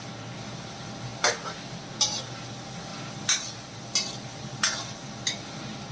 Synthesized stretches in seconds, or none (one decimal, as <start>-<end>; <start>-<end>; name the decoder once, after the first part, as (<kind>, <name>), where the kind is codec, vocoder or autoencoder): none